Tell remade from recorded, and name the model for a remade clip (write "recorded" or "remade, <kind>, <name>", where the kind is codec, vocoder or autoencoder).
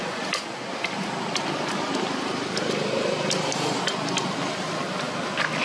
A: recorded